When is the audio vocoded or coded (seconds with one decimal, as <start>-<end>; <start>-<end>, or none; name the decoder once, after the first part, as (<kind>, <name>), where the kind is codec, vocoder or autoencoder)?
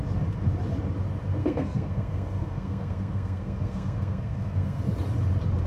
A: 1.4-4.8 (codec, SNAC)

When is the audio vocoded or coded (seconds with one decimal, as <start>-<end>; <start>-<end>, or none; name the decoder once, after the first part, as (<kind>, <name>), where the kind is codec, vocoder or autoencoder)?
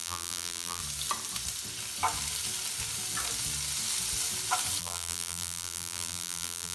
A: 0.0-0.8 (vocoder, BigVGAN v2); 4.8-6.7